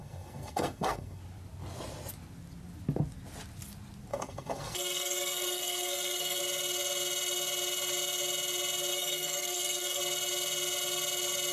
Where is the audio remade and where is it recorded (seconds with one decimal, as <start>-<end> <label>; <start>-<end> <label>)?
0.0-1.2 remade; 1.2-4.1 recorded; 4.1-6.4 remade; 6.4-8.9 recorded; 8.9-10.0 remade; 10.0-11.5 recorded